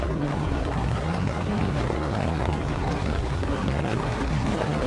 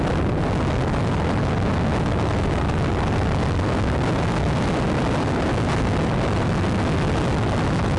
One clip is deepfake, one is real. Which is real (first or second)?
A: second